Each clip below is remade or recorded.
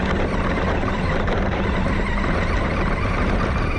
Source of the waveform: remade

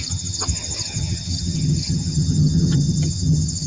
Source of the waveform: remade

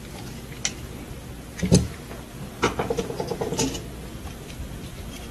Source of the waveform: recorded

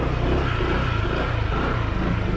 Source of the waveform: recorded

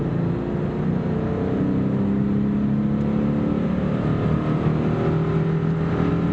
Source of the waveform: recorded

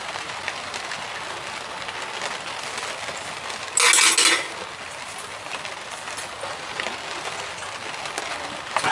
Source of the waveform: recorded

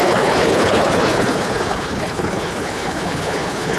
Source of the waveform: remade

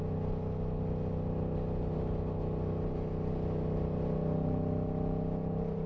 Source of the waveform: recorded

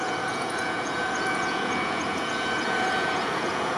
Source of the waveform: remade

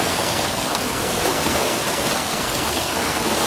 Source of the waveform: remade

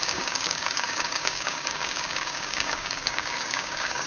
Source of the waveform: remade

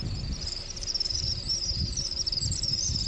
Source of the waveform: remade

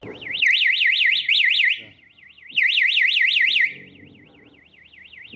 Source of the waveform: recorded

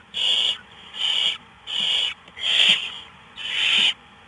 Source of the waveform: remade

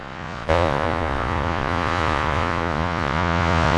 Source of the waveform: remade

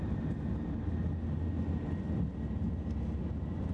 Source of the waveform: recorded